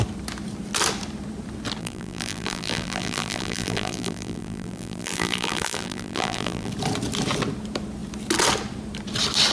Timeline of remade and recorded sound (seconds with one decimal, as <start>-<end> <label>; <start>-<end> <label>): 0.0-1.8 recorded; 1.8-6.7 remade; 6.7-9.5 recorded